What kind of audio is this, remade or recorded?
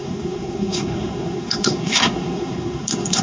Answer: remade